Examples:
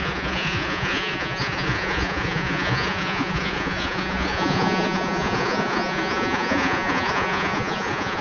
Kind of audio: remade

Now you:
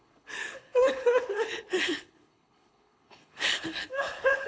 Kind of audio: remade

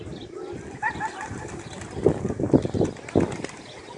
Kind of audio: recorded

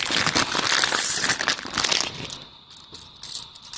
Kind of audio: recorded